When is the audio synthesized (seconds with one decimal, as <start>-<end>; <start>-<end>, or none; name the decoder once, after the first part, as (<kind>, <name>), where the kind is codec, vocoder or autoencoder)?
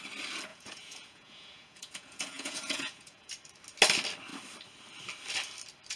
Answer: 0.5-3.3 (vocoder, Vocos)